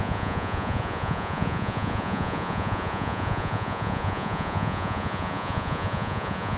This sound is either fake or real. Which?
fake